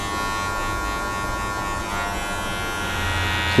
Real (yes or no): yes